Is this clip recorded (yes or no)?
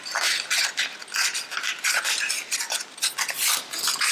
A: yes